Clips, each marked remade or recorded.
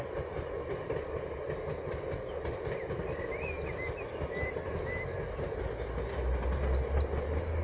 recorded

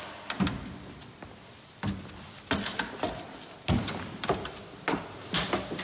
recorded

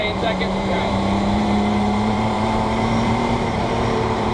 remade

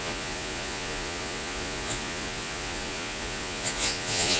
remade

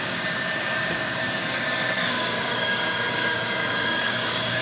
remade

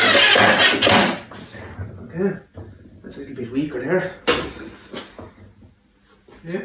recorded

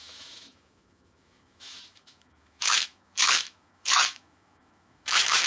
remade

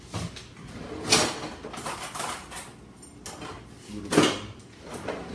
recorded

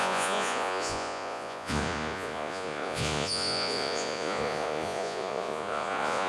remade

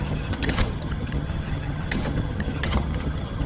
remade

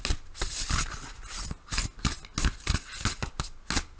recorded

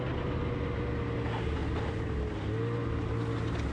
recorded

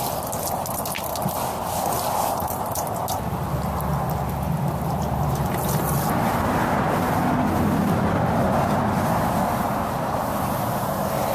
recorded